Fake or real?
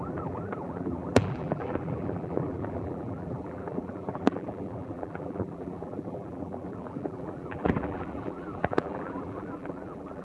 fake